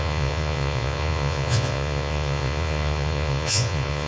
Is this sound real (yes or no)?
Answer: no